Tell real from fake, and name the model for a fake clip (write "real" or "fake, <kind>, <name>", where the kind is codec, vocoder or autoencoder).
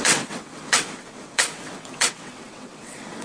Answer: fake, vocoder, WaveNeXt